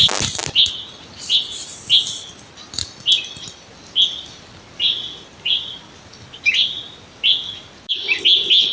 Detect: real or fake real